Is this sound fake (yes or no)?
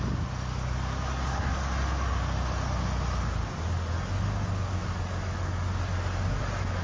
no